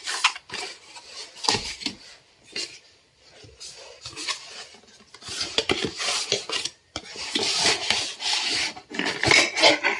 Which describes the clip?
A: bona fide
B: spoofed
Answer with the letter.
A